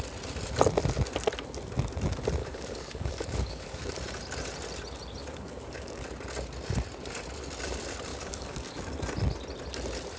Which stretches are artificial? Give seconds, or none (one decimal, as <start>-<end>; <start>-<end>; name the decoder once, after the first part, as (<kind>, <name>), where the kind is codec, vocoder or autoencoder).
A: 2.4-3.9 (codec, DAC); 5.2-6.0; 8.1-8.9